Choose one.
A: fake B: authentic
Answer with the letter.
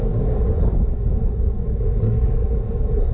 A